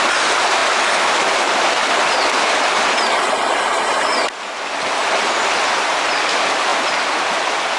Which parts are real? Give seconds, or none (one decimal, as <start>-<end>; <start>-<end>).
0.0-7.8